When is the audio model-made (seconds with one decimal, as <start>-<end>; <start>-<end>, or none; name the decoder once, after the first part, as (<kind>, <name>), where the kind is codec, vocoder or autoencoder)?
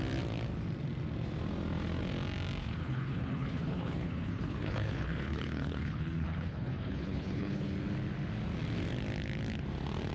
2.6-7.7 (codec, HILCodec)